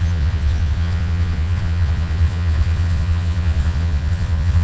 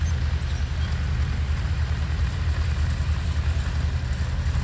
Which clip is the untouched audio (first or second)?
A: second